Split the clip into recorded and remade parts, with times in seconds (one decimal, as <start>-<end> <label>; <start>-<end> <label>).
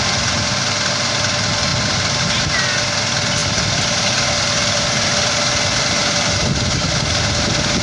0.0-7.8 recorded